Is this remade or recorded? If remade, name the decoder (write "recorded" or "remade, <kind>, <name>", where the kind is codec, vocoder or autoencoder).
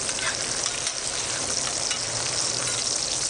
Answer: recorded